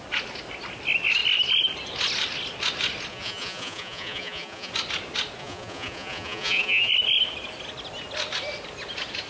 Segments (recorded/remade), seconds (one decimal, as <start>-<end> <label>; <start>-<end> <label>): 0.0-3.1 recorded; 3.1-4.7 remade; 4.7-5.4 recorded; 5.4-6.9 remade; 6.9-9.3 recorded